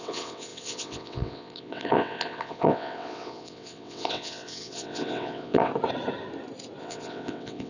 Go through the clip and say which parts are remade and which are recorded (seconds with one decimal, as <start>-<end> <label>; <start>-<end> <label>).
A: 0.0-5.7 remade; 5.7-6.8 recorded; 6.8-7.7 remade